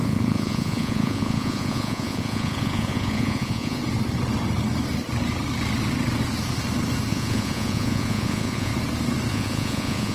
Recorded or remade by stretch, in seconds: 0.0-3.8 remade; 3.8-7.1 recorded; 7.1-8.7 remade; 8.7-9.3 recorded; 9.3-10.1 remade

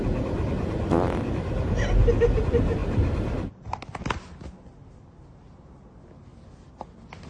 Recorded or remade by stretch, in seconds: 0.0-7.3 recorded

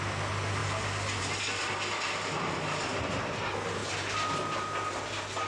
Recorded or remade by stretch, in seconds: 0.0-5.5 recorded